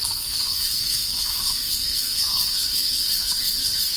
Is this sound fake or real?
fake